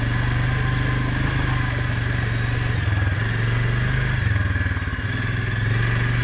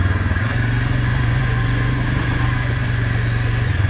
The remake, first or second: second